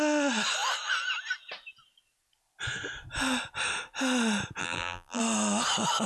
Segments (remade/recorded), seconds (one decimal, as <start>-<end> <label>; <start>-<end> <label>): 0.0-4.6 recorded; 4.6-5.2 remade; 5.2-6.1 recorded